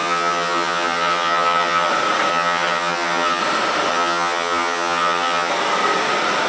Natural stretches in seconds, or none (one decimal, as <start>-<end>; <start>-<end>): 1.9-2.3; 3.4-3.9; 5.5-6.5